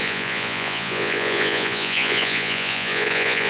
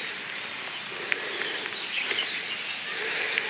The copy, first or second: first